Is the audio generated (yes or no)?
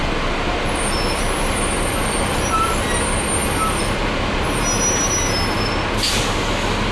no